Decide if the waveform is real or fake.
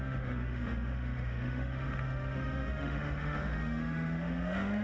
fake